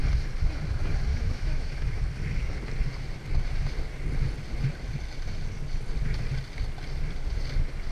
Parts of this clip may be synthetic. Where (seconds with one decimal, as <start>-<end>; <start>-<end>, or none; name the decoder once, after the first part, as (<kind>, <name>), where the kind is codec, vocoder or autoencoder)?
1.1-2.1 (autoencoder, DAC-VAE)